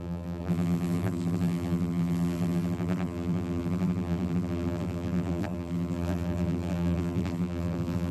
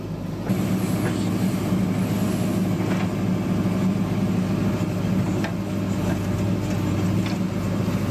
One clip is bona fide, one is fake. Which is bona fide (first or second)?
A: second